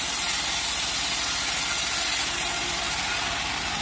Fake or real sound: real